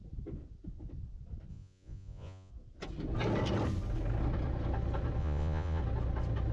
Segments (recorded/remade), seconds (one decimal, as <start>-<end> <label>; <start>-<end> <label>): 0.0-1.5 recorded; 1.5-2.5 remade; 2.5-5.2 recorded; 5.2-5.8 remade; 5.8-6.5 recorded